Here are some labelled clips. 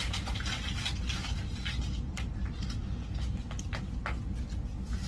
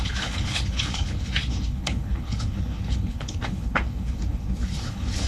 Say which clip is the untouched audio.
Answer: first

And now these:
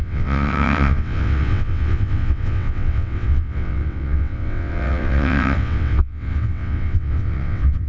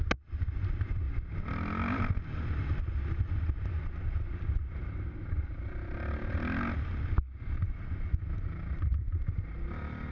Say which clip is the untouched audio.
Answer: second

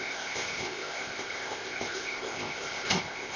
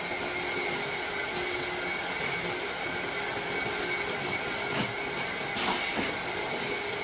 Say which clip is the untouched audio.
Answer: second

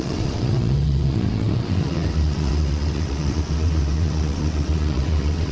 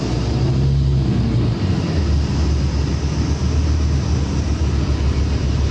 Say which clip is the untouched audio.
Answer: second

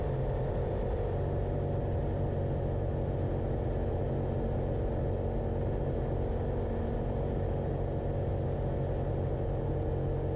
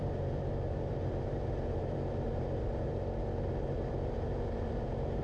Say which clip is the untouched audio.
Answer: first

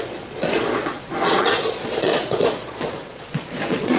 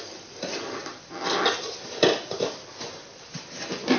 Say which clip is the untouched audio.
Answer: second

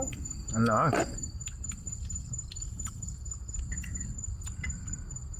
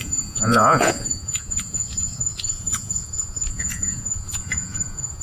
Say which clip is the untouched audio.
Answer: first